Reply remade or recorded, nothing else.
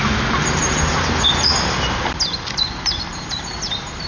remade